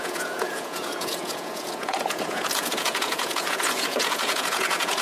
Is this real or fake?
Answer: fake